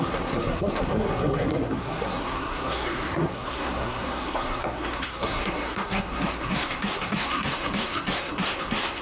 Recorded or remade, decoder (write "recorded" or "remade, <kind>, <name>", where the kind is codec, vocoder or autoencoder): remade, codec, SNAC